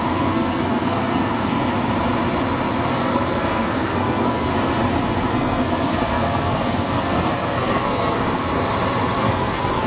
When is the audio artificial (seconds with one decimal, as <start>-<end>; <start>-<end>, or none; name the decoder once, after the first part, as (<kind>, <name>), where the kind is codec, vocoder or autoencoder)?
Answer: 0.0-1.7 (codec, SNAC); 2.9-4.5; 5.3-8.5; 9.2-9.9